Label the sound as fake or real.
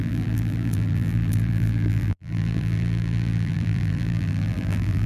fake